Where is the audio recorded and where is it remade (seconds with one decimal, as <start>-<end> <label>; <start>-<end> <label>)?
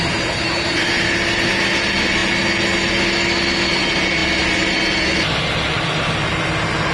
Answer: 0.0-6.9 recorded